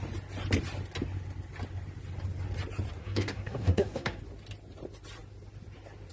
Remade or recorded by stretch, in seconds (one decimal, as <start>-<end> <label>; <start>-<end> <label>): 0.0-3.0 recorded; 3.0-4.2 remade; 4.2-6.1 recorded